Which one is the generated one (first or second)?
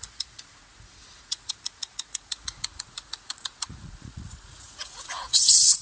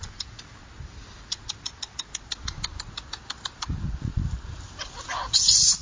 first